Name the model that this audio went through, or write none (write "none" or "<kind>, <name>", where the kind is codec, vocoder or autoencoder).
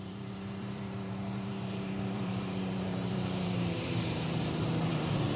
vocoder, BigVGAN v2